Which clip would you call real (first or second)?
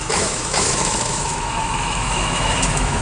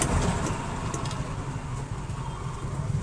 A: second